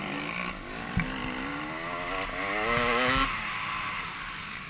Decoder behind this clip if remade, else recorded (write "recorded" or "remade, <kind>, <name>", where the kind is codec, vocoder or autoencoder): recorded